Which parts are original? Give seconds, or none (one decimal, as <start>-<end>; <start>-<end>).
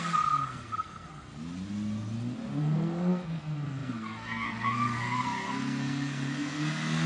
1.3-2.6